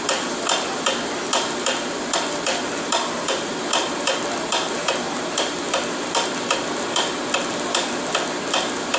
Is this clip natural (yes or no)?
no